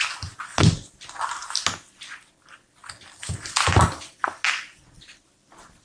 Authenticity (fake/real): real